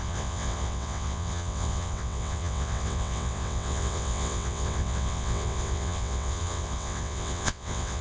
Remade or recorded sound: remade